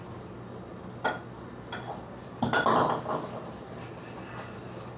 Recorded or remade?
recorded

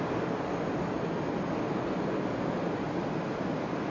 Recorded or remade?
recorded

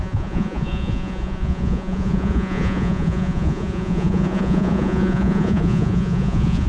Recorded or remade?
remade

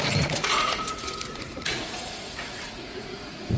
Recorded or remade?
remade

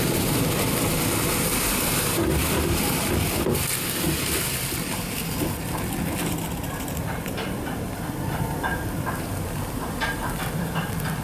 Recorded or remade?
remade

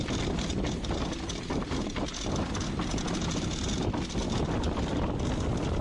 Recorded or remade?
recorded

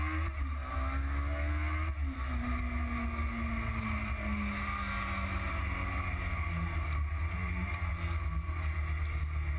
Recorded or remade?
recorded